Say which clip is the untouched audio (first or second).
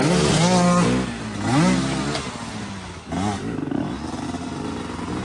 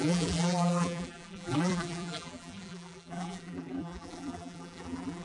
first